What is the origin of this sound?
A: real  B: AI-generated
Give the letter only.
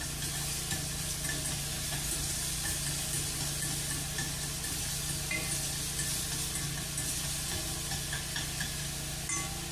A